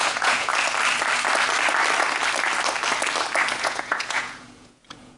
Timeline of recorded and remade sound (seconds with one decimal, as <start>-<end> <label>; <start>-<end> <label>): 0.0-0.5 remade; 0.5-3.6 recorded; 3.6-5.2 remade